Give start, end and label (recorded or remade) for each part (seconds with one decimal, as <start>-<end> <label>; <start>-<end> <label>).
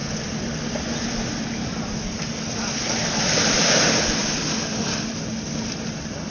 0.0-6.3 recorded